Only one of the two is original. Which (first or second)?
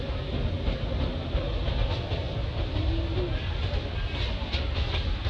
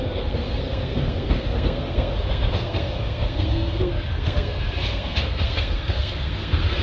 first